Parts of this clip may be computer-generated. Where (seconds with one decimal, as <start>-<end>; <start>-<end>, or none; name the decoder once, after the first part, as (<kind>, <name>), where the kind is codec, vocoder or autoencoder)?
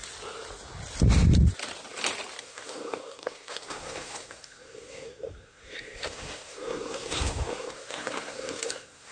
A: 2.4-9.1 (codec, SNAC)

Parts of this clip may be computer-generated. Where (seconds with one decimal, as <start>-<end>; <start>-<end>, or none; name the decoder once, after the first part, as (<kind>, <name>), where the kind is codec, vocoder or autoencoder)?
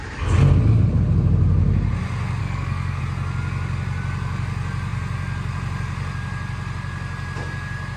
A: 2.4-3.0 (codec, SNAC)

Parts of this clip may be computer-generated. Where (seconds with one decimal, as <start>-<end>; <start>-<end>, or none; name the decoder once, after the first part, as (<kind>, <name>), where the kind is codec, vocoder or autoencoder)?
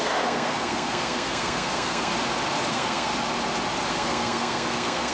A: 0.0-2.1 (codec, SNAC); 2.7-3.1; 3.9-5.1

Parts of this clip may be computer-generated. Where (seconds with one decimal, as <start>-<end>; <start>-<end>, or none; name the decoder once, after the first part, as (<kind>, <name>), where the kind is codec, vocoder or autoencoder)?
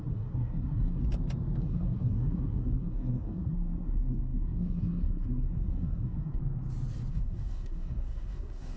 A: 0.0-1.0 (codec, SNAC); 1.6-6.4; 7.1-8.8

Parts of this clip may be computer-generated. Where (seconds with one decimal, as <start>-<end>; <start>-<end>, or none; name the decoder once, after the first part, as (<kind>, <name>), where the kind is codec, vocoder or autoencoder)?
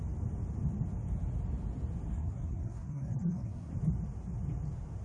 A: 2.1-3.7 (codec, SNAC)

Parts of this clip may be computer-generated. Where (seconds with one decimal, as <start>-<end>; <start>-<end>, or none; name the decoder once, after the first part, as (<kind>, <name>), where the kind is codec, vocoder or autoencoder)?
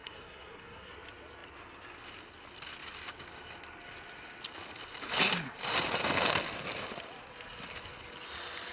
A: 0.0-0.9 (codec, SNAC)